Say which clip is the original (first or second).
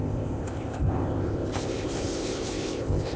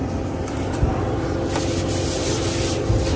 second